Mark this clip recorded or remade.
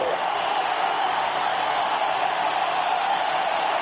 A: remade